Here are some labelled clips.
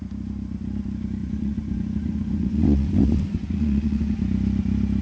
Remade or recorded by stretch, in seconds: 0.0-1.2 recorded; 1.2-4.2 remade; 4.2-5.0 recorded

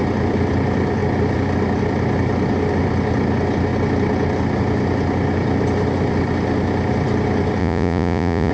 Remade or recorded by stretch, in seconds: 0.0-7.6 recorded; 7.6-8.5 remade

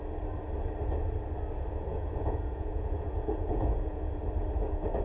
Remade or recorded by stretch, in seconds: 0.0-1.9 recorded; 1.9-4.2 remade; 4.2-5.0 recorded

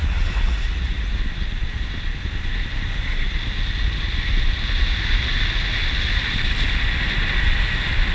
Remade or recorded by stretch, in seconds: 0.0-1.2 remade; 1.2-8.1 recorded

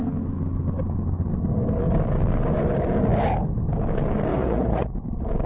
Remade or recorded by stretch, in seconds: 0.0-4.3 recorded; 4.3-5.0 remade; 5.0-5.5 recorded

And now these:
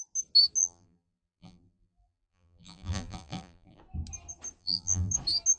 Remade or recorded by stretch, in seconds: 0.0-0.6 recorded; 0.6-3.8 remade; 3.8-4.6 recorded; 4.6-5.1 remade; 5.1-5.6 recorded

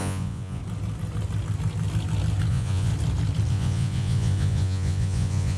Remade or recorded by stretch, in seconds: 0.0-0.6 remade; 0.6-2.5 recorded; 2.5-2.9 remade; 2.9-3.5 recorded; 3.5-5.6 remade